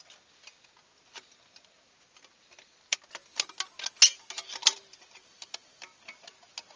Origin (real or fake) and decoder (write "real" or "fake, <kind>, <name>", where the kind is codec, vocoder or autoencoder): real